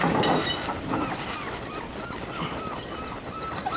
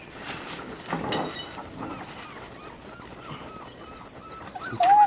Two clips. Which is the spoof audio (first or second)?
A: first